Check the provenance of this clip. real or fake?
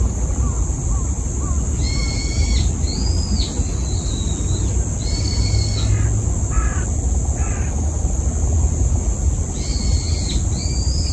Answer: real